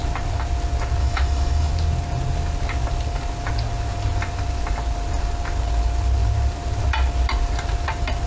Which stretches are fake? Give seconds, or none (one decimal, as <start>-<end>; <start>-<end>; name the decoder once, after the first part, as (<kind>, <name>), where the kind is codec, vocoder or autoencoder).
1.0-1.7 (autoencoder, DAC-VAE)